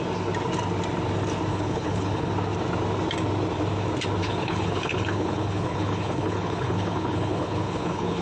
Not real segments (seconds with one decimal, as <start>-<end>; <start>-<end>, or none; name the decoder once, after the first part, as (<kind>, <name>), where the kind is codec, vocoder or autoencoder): 1.5-2.3 (codec, HILCodec); 4.2-8.2